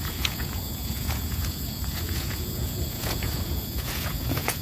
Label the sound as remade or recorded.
remade